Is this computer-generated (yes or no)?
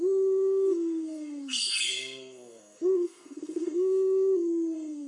yes